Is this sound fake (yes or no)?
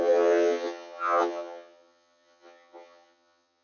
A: yes